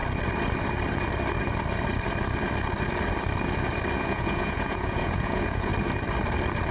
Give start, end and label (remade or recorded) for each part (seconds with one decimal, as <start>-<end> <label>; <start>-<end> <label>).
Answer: 0.0-4.0 recorded; 4.0-5.7 remade; 5.7-6.7 recorded